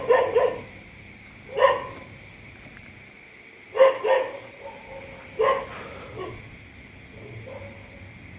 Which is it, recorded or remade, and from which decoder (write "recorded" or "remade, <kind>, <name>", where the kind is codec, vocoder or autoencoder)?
recorded